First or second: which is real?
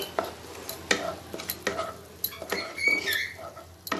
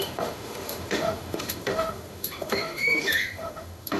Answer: first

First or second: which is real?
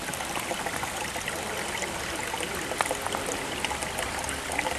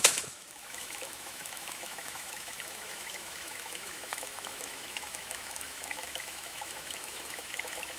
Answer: first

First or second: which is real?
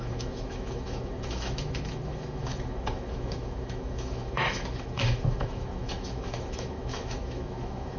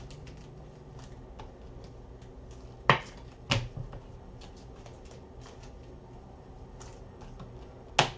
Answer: second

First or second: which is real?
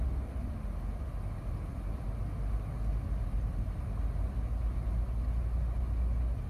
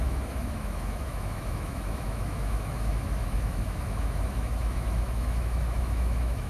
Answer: first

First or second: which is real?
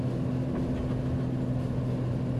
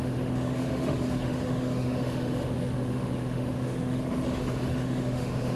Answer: first